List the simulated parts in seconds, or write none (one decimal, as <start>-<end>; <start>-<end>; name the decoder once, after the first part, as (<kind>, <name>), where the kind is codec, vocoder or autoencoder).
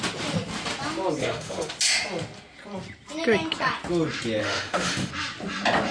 1.2-1.7 (autoencoder, DAC-VAE); 4.4-5.1